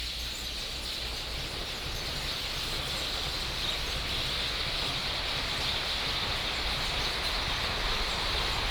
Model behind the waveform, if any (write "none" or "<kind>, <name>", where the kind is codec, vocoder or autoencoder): none